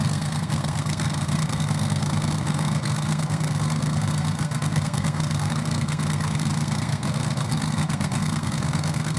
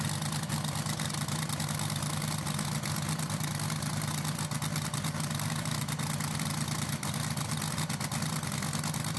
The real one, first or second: second